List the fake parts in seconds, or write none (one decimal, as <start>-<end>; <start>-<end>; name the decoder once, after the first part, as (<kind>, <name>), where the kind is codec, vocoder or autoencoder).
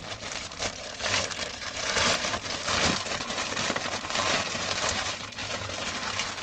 0.0-2.3 (vocoder, BigVGAN v2); 3.1-5.4